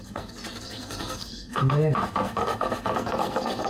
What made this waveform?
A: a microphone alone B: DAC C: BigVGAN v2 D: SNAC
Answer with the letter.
D